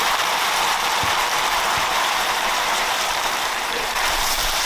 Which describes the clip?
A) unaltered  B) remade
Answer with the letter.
B